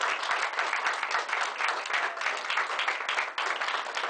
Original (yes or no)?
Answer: yes